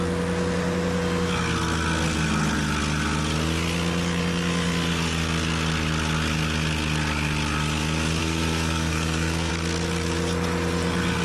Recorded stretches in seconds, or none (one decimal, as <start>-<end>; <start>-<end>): 0.0-8.2; 9.5-11.2